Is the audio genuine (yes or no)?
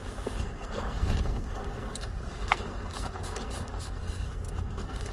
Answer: no